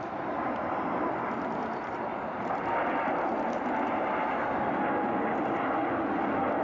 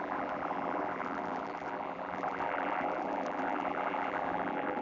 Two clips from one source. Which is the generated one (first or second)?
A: second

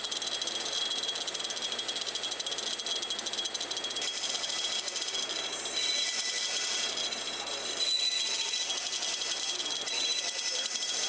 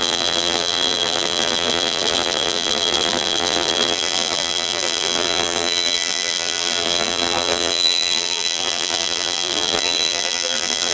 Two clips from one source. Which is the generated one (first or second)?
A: second